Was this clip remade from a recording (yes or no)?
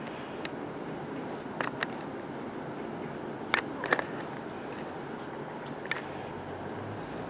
no